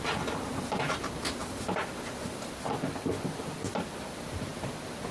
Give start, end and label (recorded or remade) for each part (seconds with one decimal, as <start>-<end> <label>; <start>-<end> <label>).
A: 0.0-5.1 recorded